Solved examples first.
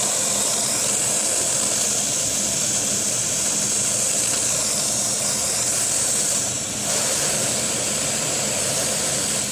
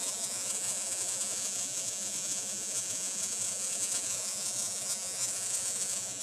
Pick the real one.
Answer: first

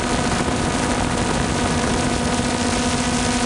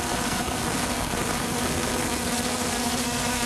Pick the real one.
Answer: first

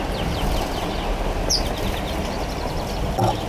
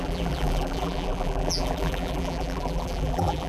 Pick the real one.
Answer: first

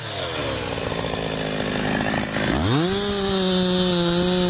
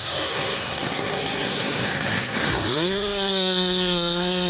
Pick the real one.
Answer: first